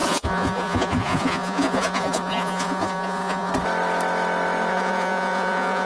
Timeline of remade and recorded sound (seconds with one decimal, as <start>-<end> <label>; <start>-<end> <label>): 0.0-3.5 remade; 3.5-4.7 recorded; 4.7-5.9 remade

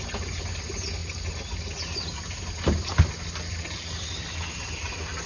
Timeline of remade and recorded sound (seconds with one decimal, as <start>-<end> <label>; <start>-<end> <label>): 0.0-5.3 recorded

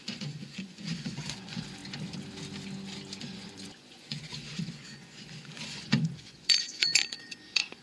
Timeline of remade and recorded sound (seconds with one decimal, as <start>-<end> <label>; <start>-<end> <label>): 0.0-1.8 remade; 1.8-3.2 recorded; 3.2-7.8 remade

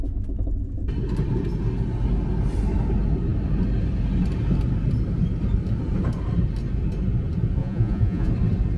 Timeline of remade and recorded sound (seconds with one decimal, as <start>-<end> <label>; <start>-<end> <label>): 0.0-7.6 recorded; 7.6-8.3 remade; 8.3-8.8 recorded

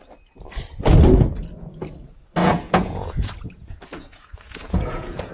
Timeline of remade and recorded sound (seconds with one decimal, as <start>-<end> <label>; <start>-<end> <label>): 0.0-2.4 recorded; 2.4-5.3 remade